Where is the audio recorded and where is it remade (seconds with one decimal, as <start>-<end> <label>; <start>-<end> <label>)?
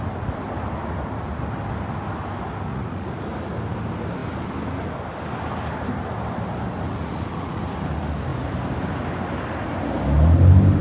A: 0.0-2.7 recorded; 2.7-3.2 remade; 3.2-7.0 recorded; 7.0-7.6 remade; 7.6-10.8 recorded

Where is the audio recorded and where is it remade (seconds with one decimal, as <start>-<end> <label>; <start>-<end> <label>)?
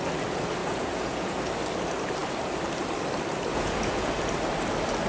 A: 0.0-0.6 recorded; 0.6-1.4 remade; 1.4-3.5 recorded; 3.5-4.1 remade; 4.1-5.1 recorded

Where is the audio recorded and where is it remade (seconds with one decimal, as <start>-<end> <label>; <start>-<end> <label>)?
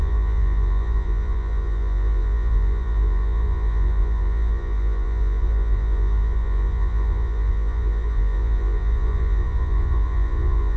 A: 0.0-10.8 remade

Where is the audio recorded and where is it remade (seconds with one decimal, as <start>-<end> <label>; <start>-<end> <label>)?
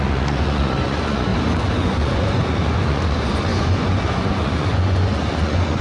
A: 0.0-1.3 remade; 1.3-1.8 recorded; 1.8-5.8 remade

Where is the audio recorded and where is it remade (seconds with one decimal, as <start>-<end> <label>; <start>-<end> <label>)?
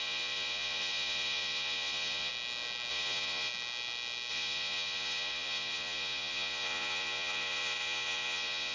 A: 0.0-2.3 remade; 2.3-2.9 recorded; 2.9-3.5 remade; 3.5-4.3 recorded; 4.3-8.7 remade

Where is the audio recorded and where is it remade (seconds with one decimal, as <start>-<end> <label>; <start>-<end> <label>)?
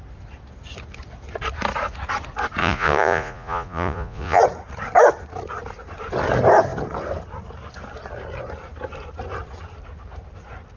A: 0.0-2.6 recorded; 2.6-4.4 remade; 4.4-10.8 recorded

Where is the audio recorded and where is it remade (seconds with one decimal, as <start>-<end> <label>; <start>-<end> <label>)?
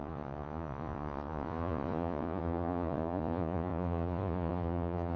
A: 0.0-5.2 remade